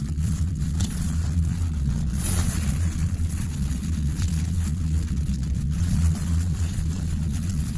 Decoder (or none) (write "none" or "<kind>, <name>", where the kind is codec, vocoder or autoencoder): vocoder, Vocos